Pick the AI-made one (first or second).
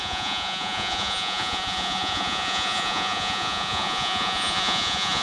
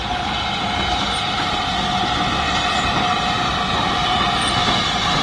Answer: first